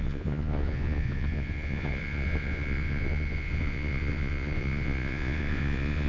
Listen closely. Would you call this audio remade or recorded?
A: remade